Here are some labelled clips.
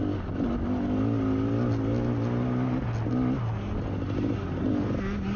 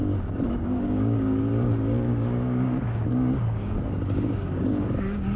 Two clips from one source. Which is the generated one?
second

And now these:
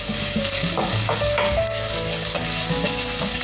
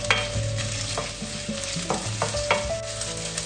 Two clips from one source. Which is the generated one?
first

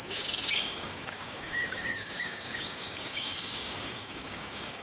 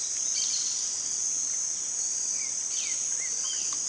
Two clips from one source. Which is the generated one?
first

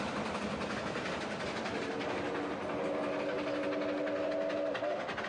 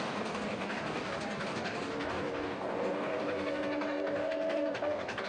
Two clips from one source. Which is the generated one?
second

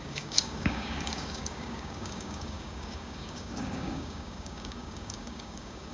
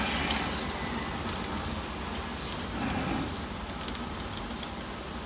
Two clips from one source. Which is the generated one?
first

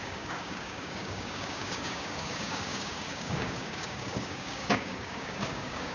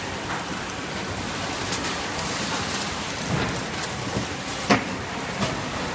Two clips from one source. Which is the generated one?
first